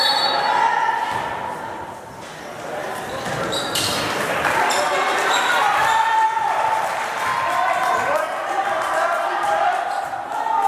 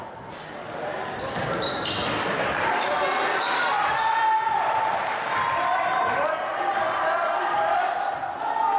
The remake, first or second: first